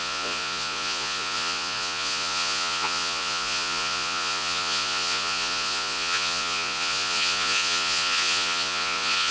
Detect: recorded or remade remade